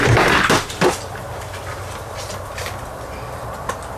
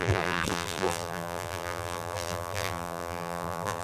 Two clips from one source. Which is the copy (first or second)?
second